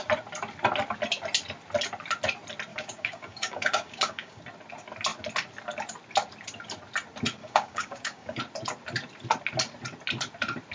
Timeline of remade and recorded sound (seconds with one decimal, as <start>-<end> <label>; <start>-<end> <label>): 0.0-2.7 recorded; 2.7-4.4 remade; 4.4-7.4 recorded; 7.4-8.4 remade; 8.4-10.7 recorded